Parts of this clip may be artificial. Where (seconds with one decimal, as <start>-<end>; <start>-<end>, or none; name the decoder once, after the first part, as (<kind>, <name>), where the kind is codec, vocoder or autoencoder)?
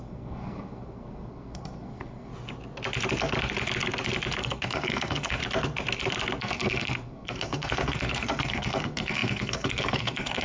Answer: 0.0-2.3 (codec, SNAC); 4.4-5.4; 6.4-10.4